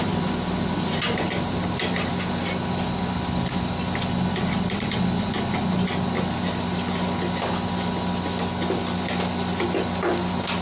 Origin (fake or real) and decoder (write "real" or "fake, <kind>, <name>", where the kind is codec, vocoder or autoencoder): real